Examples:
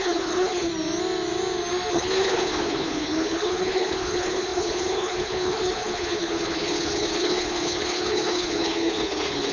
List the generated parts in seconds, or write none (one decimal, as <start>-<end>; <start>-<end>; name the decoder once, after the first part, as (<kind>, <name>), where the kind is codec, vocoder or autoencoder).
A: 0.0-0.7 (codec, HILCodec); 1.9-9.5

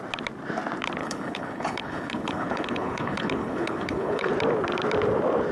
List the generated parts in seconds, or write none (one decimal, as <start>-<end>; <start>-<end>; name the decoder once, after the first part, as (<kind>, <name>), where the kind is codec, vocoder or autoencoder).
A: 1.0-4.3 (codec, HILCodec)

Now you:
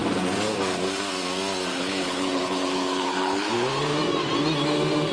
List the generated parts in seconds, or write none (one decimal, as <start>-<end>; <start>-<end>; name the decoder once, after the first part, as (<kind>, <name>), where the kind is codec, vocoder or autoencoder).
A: 1.7-3.5 (codec, HILCodec)

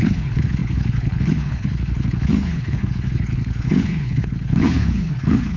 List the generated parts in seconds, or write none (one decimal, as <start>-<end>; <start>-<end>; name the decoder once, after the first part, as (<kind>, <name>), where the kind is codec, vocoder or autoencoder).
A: 0.0-5.6 (codec, HILCodec)

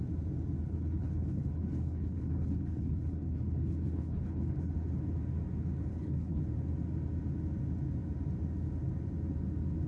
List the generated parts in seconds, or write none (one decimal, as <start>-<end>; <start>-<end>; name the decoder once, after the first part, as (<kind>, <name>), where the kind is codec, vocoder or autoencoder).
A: 0.6-4.7 (codec, HILCodec); 5.9-6.4

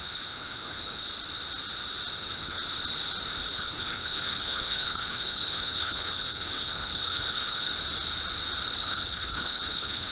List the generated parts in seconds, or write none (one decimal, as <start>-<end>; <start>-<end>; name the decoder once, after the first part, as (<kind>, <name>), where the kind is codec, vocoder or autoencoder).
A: 0.0-1.0 (codec, HILCodec); 2.2-2.6; 3.5-7.7; 8.7-10.1

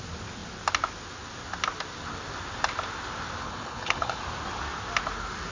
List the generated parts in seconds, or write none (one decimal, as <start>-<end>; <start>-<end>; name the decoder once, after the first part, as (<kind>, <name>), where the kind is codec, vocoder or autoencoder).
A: 3.4-4.2 (codec, HILCodec)

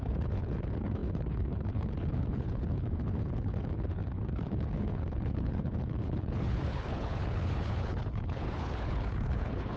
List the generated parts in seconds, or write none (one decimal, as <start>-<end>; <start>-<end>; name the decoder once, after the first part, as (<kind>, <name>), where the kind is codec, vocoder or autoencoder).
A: 0.0-9.8 (codec, HILCodec)